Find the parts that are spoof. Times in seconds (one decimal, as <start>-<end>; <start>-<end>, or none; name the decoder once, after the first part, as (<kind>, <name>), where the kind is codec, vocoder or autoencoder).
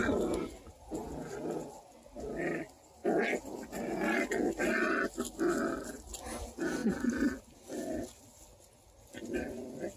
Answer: none